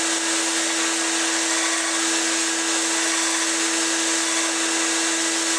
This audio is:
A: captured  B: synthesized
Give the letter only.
A